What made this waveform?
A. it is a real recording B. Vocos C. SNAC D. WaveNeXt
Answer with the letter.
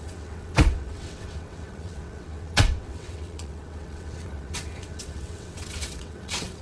D